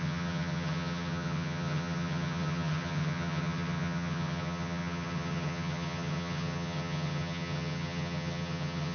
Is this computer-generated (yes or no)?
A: yes